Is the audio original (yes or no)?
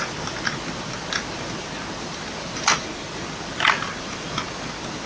yes